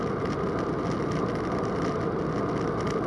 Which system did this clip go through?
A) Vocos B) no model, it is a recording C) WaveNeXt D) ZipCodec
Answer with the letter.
B